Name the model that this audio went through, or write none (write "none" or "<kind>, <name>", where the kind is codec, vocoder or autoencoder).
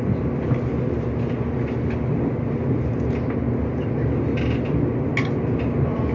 none